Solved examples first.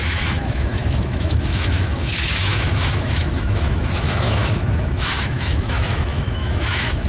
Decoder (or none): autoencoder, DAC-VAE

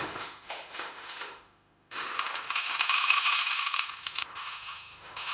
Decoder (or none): autoencoder, DAC-VAE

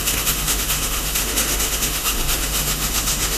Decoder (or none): autoencoder, DAC-VAE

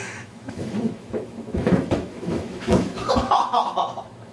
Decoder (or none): autoencoder, DAC-VAE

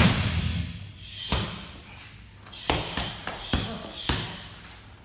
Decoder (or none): none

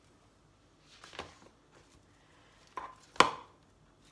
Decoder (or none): none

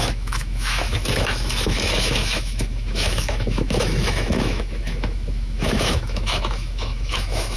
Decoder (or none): autoencoder, DAC-VAE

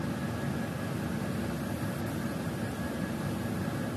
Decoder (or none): none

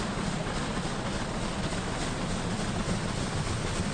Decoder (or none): none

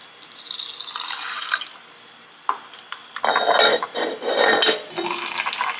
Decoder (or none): none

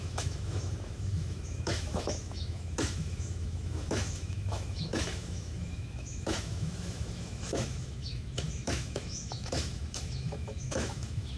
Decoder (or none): autoencoder, DAC-VAE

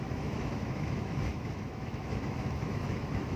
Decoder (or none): autoencoder, DAC-VAE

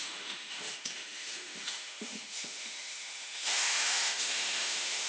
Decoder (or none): autoencoder, DAC-VAE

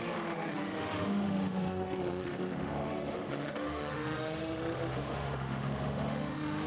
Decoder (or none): autoencoder, DAC-VAE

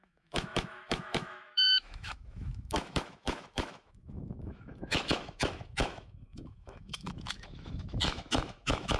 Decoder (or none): autoencoder, DAC-VAE